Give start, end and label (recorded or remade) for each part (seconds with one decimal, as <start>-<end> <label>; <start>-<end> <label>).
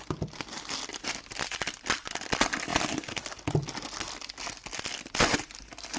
0.0-6.0 recorded